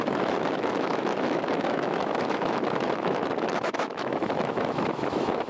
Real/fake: fake